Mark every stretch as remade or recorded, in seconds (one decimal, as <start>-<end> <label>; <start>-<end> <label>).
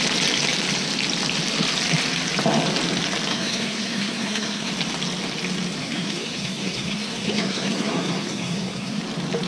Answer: 0.0-3.3 recorded; 3.3-4.7 remade; 4.7-5.8 recorded; 5.8-9.0 remade; 9.0-9.5 recorded